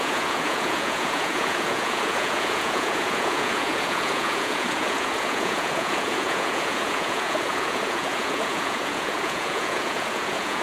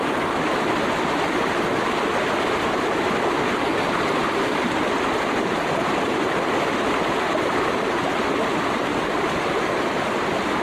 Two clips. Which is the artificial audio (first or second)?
first